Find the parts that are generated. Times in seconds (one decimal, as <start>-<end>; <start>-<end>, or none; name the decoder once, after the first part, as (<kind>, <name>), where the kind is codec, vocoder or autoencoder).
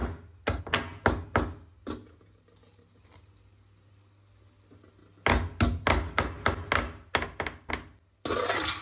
none